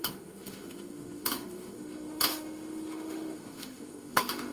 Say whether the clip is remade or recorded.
remade